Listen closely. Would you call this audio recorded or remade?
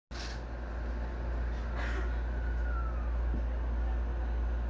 recorded